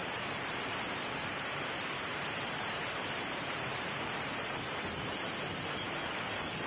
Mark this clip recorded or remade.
remade